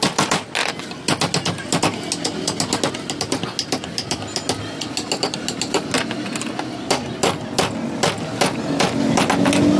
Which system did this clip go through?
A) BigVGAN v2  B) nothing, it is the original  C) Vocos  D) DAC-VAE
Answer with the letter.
B